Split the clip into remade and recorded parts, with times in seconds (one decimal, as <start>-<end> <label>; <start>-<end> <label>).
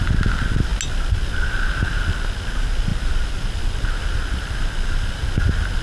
0.0-5.8 recorded